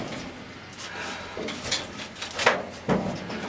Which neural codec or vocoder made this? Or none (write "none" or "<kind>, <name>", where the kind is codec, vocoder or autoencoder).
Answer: none